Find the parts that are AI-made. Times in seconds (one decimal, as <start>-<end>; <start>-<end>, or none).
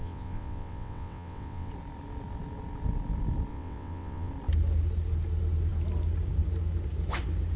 0.0-1.7; 3.5-4.3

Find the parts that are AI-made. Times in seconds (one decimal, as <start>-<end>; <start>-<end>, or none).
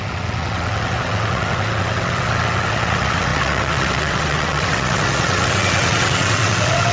0.0-6.9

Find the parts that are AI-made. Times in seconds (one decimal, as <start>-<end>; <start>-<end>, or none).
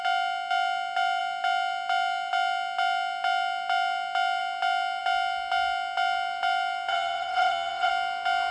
6.9-7.9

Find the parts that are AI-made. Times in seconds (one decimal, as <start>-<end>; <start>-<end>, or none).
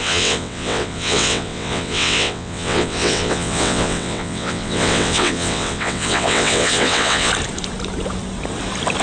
0.0-7.3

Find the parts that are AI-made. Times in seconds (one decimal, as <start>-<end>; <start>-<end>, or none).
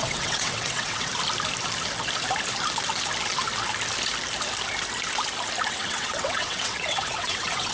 0.0-1.1; 5.7-7.7